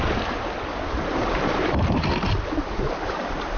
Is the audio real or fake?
real